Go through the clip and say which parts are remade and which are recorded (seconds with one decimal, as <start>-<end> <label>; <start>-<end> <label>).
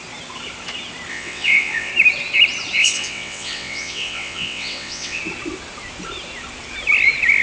0.0-1.1 recorded; 1.1-1.9 remade; 1.9-2.8 recorded; 2.8-5.2 remade; 5.2-7.4 recorded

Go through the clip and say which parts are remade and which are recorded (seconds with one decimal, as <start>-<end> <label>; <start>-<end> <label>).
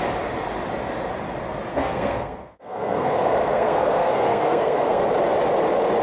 0.0-1.7 recorded; 1.7-5.0 remade; 5.0-6.0 recorded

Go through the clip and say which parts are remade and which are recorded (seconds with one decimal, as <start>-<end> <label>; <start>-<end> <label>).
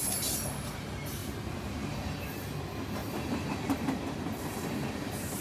0.0-1.2 recorded; 1.2-1.9 remade; 1.9-3.0 recorded; 3.0-5.4 remade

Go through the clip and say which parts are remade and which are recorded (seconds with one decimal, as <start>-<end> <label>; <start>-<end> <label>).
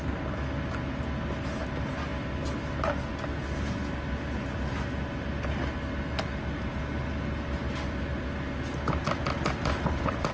0.0-10.3 recorded